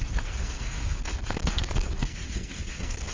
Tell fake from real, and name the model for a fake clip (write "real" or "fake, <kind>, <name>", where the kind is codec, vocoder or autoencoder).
fake, codec, SNAC